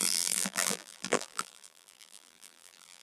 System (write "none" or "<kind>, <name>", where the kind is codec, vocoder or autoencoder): vocoder, BigVGAN v2